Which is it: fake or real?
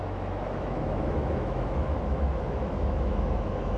fake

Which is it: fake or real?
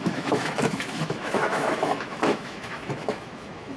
fake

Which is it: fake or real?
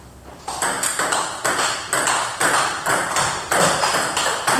real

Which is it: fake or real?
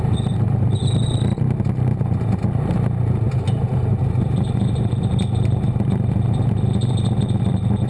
real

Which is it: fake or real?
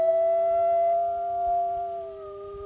real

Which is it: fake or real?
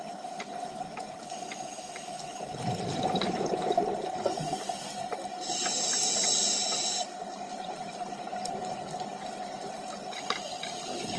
real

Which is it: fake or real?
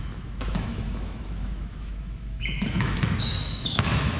fake